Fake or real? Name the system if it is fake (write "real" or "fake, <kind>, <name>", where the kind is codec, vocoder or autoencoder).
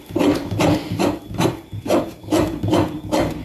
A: real